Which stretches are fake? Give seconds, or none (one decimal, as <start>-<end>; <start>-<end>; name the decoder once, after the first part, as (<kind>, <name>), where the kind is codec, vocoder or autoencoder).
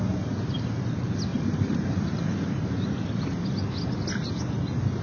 1.3-3.5 (vocoder, BigVGAN v2)